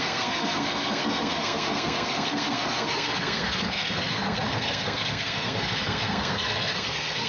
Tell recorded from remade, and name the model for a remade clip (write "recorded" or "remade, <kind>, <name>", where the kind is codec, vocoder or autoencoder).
remade, codec, SNAC